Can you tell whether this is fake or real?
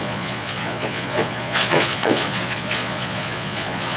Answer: fake